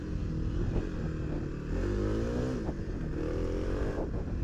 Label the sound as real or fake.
real